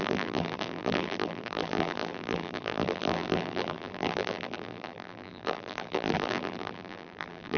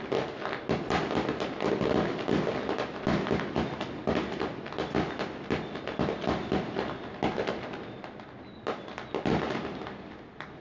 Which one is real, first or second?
second